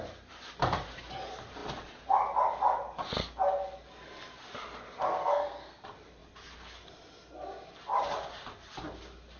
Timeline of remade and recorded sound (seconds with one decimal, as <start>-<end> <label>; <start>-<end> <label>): 0.0-5.1 recorded; 5.1-5.8 remade; 5.8-9.4 recorded